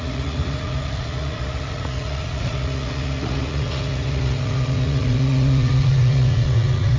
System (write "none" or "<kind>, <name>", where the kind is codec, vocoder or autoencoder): vocoder, Vocos